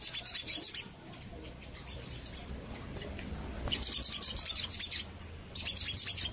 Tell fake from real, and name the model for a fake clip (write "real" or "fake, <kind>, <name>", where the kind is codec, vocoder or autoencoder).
fake, vocoder, BigVGAN v2